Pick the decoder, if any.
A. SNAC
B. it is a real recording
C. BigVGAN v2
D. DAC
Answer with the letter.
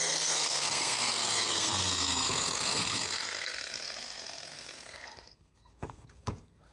A